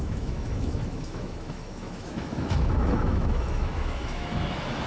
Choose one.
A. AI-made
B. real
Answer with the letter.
A